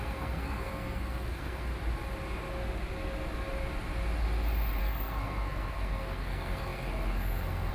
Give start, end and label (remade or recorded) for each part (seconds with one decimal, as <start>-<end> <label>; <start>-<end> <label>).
0.0-1.7 remade; 1.7-4.8 recorded; 4.8-7.7 remade